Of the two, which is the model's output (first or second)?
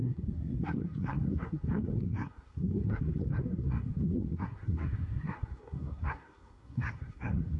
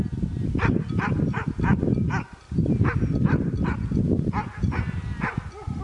first